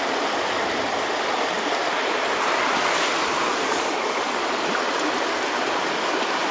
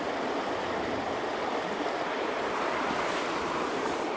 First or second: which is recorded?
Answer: first